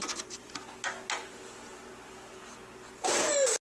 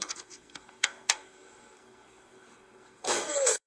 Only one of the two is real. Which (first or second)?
first